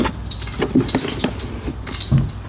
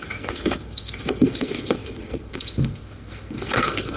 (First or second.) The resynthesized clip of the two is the second